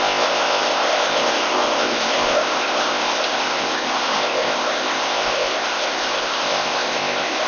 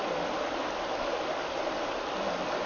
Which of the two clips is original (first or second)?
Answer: second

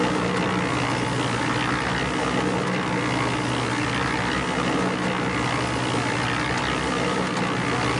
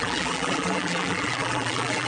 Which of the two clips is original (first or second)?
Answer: first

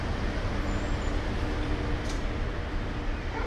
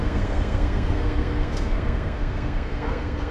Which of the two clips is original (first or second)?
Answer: first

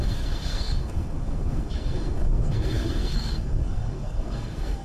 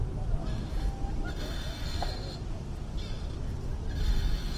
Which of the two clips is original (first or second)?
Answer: second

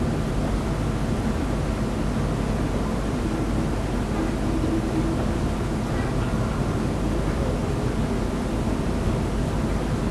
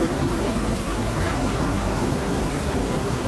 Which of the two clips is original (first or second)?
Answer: first